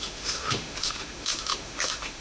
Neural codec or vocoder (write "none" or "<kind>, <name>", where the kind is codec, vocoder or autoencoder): autoencoder, DAC-VAE